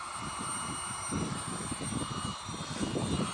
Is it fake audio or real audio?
fake